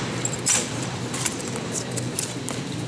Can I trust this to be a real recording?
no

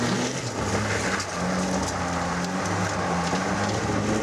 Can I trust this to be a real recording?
yes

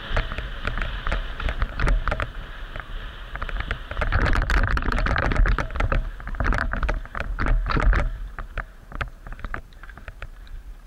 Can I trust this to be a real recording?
no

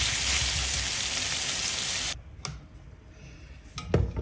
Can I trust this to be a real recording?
yes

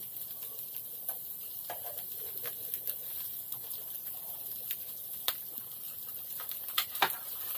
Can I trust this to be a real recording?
yes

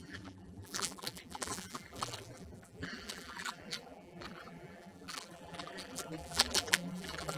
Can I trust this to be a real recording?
no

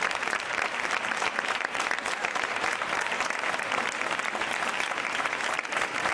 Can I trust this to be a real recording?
no